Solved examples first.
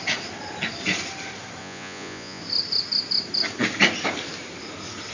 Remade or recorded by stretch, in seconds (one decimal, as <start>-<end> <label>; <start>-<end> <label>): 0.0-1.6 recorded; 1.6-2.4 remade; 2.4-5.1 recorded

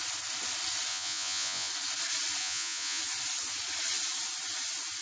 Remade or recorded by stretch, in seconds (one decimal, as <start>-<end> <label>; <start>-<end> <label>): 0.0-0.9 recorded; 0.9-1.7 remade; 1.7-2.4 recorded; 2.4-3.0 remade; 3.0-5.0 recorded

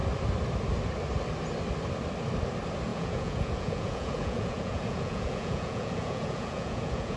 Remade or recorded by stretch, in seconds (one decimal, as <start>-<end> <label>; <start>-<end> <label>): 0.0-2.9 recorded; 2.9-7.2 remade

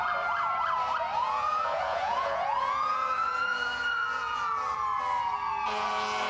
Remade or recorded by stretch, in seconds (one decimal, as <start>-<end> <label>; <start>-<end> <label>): 0.0-1.1 recorded; 1.1-4.4 remade; 4.4-6.3 recorded

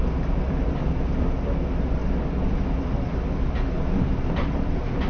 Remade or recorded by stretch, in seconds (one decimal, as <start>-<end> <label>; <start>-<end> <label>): 0.0-5.1 recorded

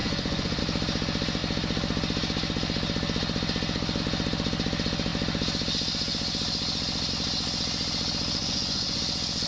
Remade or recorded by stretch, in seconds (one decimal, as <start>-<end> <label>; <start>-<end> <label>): 0.0-0.6 remade; 0.6-8.4 recorded; 8.4-9.0 remade; 9.0-9.5 recorded

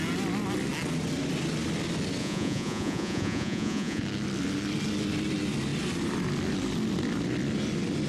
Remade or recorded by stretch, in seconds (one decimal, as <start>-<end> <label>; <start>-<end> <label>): 0.0-2.2 recorded; 2.2-4.0 remade; 4.0-8.1 recorded

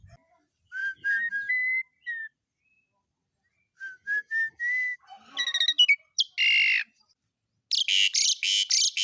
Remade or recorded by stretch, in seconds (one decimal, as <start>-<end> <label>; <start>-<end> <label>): 0.0-9.0 recorded